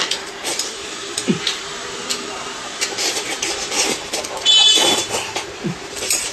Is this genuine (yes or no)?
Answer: no